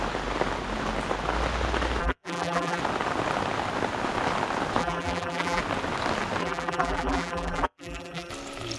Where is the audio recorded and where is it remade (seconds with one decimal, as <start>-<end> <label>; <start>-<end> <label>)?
0.0-2.0 recorded; 2.0-2.8 remade; 2.8-4.8 recorded; 4.8-5.6 remade; 5.6-6.4 recorded; 6.4-8.3 remade; 8.3-8.8 recorded